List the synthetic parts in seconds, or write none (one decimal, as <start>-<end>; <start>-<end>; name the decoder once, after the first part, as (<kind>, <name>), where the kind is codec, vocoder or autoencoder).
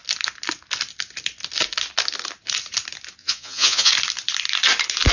3.2-3.9 (vocoder, Vocos)